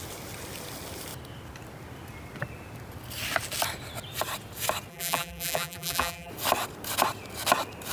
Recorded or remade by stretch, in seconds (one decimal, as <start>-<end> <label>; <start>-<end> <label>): 0.0-4.9 recorded; 4.9-6.3 remade; 6.3-7.9 recorded